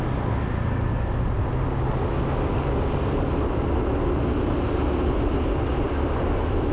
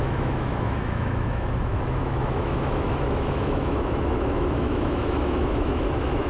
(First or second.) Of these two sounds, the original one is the first